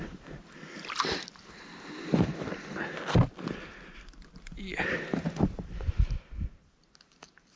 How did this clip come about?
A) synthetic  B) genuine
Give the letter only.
B